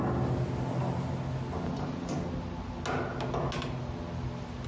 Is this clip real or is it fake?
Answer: real